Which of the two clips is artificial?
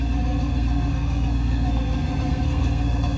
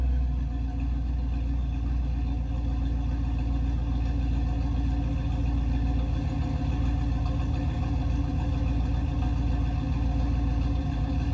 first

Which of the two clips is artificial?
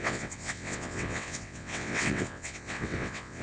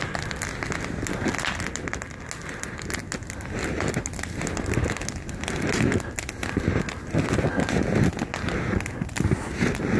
first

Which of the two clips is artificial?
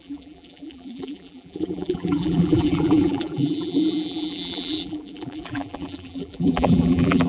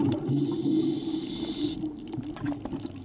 first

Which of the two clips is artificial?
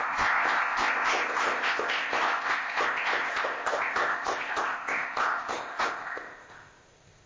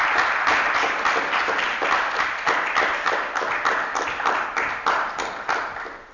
first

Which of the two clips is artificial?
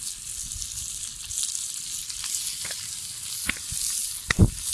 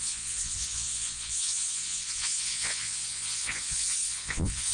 second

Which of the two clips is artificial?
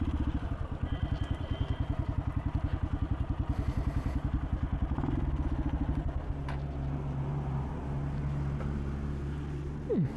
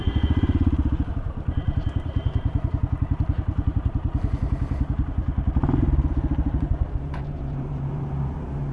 second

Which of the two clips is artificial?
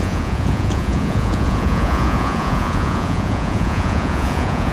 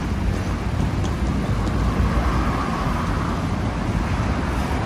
first